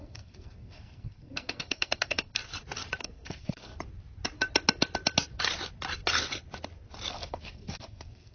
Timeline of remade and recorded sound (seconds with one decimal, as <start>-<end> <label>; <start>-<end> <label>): 0.0-2.4 remade; 2.4-3.0 recorded; 3.0-3.7 remade; 3.7-7.1 recorded; 7.1-8.3 remade